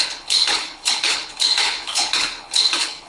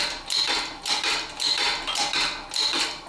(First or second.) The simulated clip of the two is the first